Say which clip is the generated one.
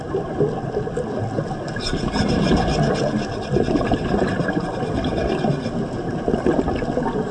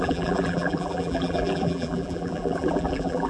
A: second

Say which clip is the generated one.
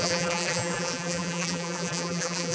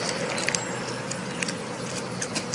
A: first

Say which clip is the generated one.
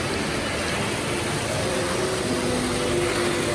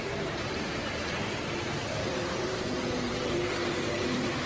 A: second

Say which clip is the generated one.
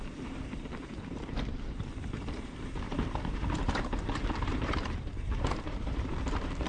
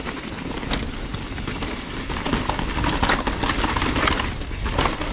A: first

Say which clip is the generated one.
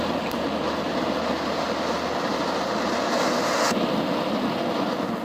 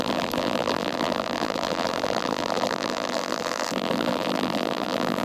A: second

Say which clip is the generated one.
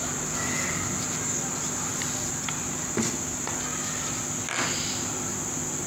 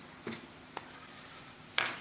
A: second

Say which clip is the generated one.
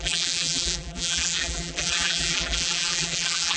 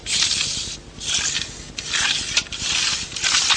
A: first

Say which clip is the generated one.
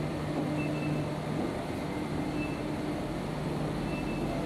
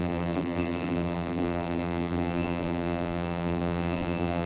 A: second